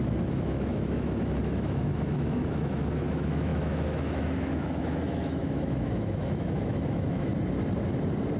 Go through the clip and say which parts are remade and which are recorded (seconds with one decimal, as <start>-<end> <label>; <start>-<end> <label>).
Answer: 0.0-7.3 remade; 7.3-8.4 recorded

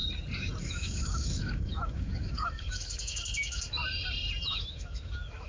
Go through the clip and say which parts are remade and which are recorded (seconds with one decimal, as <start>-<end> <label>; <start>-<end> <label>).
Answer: 0.0-0.6 recorded; 0.6-3.8 remade; 3.8-4.4 recorded; 4.4-5.5 remade

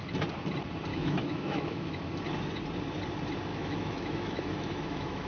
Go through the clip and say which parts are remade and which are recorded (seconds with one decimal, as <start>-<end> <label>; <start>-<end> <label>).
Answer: 0.0-0.9 recorded; 0.9-2.0 remade; 2.0-3.5 recorded; 3.5-5.3 remade

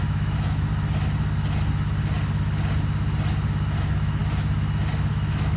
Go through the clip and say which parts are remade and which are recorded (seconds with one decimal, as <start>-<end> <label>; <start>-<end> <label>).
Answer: 0.0-0.7 remade; 0.7-3.8 recorded; 3.8-4.2 remade; 4.2-5.1 recorded; 5.1-5.6 remade

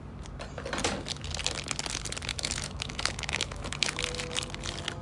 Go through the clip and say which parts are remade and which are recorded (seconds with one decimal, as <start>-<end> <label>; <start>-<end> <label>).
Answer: 0.0-2.3 recorded; 2.3-4.0 remade; 4.0-5.0 recorded

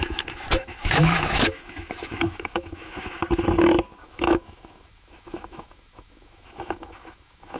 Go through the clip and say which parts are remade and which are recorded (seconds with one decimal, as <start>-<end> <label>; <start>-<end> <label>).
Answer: 0.0-3.2 remade; 3.2-4.0 recorded; 4.0-7.6 remade

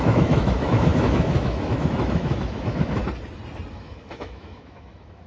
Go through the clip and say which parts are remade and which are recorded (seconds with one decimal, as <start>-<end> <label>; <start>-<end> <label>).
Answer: 0.0-3.0 remade; 3.0-3.7 recorded; 3.7-5.3 remade

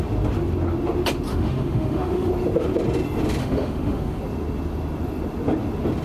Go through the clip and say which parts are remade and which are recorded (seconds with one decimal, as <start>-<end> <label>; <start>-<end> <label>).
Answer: 0.0-1.3 recorded; 1.3-2.3 remade; 2.3-3.4 recorded; 3.4-4.2 remade; 4.2-6.0 recorded